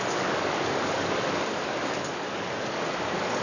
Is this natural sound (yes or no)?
no